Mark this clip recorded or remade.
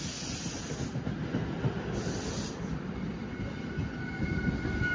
recorded